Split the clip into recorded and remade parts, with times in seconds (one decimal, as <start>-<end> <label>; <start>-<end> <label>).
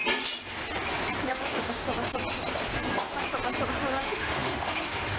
0.0-1.3 recorded; 1.3-1.8 remade; 1.8-4.0 recorded; 4.0-5.2 remade